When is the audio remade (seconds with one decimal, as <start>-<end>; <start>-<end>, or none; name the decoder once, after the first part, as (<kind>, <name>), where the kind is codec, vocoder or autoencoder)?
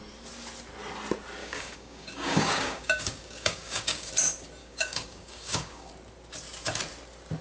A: 1.4-4.1 (codec, DAC); 4.6-5.9